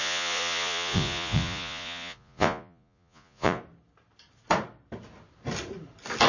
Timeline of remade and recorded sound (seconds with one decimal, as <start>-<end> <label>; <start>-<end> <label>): 0.0-3.6 remade; 3.6-6.3 recorded